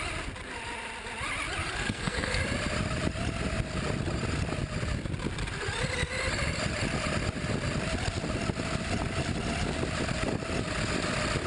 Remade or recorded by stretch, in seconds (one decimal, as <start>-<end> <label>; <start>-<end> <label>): 0.0-1.6 recorded; 1.6-2.4 remade; 2.4-11.5 recorded